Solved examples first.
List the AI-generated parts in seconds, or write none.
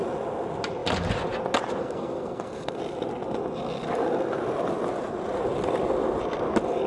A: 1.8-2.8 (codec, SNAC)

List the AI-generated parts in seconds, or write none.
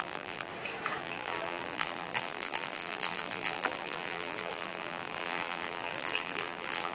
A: 0.0-0.5 (vocoder, BigVGAN v2); 1.0-6.9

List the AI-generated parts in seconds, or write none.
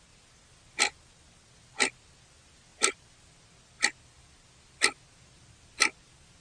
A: none